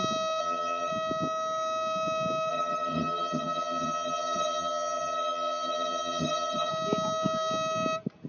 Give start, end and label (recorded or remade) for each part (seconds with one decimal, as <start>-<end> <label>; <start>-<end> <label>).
0.0-0.4 recorded; 0.4-0.9 remade; 0.9-2.5 recorded; 2.5-6.7 remade; 6.7-8.3 recorded